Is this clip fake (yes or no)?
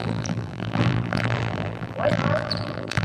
yes